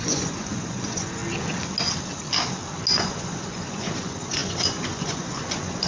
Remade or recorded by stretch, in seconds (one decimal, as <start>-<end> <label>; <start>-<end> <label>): 0.0-1.2 remade; 1.2-2.9 recorded; 2.9-5.9 remade